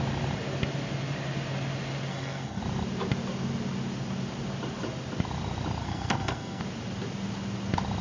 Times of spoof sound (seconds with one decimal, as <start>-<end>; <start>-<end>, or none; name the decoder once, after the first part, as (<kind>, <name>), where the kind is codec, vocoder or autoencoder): 2.1-2.6 (codec, SNAC); 5.8-6.6